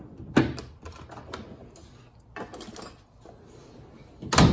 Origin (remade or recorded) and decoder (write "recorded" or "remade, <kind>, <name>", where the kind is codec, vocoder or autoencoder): recorded